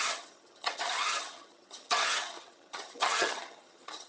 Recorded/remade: remade